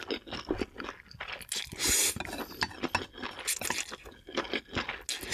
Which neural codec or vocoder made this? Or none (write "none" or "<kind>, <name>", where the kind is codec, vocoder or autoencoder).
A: none